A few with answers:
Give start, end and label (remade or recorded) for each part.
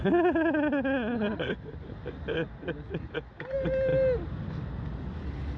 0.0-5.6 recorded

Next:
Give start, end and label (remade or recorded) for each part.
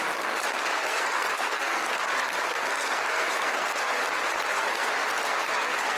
0.0-4.0 remade; 4.0-4.5 recorded; 4.5-6.0 remade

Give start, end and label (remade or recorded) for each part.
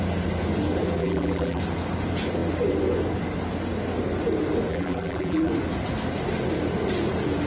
0.0-1.0 recorded; 1.0-1.6 remade; 1.6-4.7 recorded; 4.7-5.5 remade; 5.5-7.5 recorded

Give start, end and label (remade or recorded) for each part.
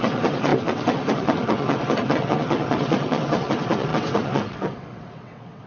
0.0-5.7 remade